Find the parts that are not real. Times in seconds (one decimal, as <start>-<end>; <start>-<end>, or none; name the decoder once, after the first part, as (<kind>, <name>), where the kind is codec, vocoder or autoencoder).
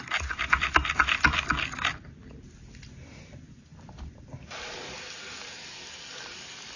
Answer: 3.7-5.1 (vocoder, BigVGAN v2)